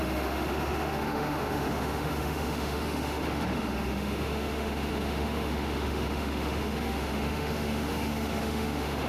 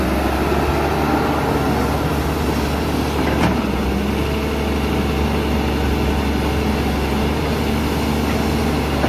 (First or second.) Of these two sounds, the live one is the second